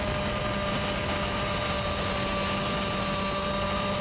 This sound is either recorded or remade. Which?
recorded